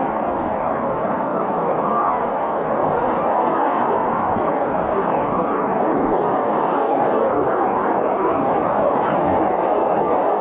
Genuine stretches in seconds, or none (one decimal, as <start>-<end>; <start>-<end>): none